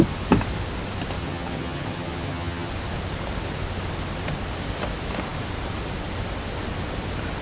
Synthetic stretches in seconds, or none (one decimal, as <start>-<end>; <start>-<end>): 1.2-2.7